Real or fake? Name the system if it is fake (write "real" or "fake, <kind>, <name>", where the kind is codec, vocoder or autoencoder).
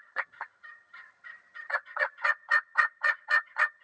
fake, vocoder, HiFi-GAN